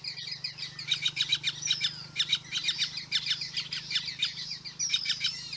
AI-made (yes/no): no